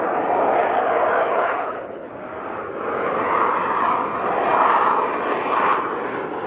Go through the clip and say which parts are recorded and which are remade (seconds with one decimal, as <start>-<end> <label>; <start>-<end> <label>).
0.0-1.2 recorded; 1.2-2.1 remade; 2.1-6.5 recorded